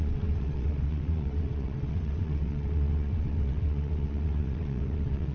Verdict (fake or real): fake